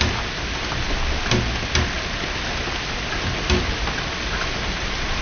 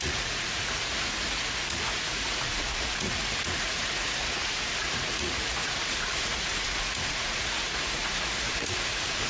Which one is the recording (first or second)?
first